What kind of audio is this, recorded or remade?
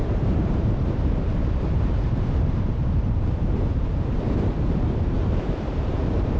remade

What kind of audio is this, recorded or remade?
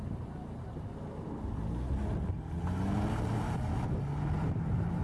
recorded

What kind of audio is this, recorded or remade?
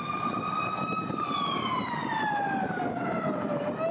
recorded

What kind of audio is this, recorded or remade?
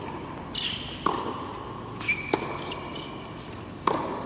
recorded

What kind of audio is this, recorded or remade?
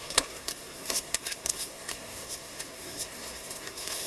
remade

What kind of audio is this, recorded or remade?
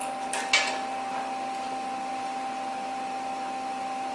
recorded